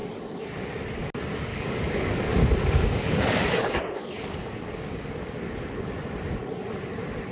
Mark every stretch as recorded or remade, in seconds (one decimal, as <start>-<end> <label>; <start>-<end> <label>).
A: 0.0-1.5 recorded; 1.5-5.9 remade; 5.9-7.3 recorded